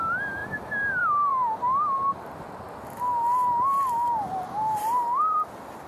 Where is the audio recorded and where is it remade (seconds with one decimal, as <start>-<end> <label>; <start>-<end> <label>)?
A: 0.0-0.4 remade; 0.4-0.9 recorded; 0.9-1.3 remade; 1.3-4.8 recorded; 4.8-5.9 remade